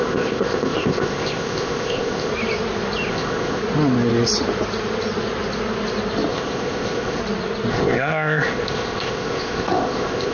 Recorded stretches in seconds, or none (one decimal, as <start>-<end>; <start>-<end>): 2.3-3.1; 3.6-6.3; 7.2-7.7